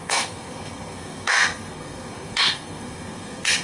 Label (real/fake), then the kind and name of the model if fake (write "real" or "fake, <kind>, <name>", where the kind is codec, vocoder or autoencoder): fake, codec, SNAC